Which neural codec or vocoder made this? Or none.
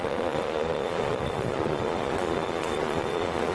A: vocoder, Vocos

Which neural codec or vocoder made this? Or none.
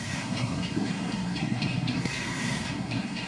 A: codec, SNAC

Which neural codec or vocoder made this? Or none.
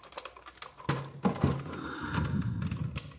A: none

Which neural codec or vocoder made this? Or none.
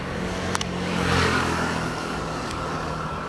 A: codec, DAC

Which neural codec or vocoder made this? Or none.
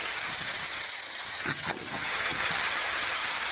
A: vocoder, HiFi-GAN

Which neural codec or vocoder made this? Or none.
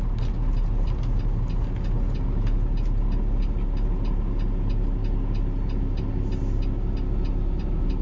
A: none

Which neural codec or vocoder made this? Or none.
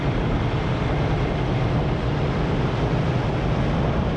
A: vocoder, BigVGAN v2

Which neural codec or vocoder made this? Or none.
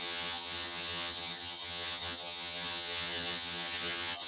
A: vocoder, HiFi-GAN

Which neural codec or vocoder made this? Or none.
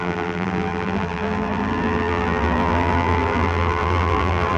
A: vocoder, BigVGAN v2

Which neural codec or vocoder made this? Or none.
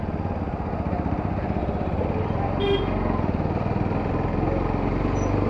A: none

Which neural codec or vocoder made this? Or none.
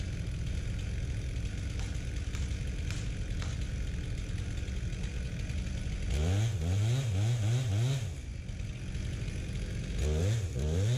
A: none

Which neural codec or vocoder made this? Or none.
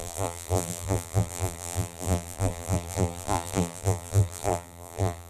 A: vocoder, BigVGAN v2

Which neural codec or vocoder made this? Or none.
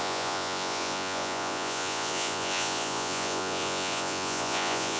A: vocoder, Vocos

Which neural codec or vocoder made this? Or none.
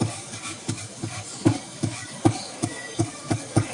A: codec, DAC